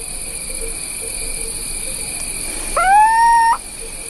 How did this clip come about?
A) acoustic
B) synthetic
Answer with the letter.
A